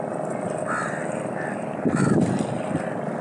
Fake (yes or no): no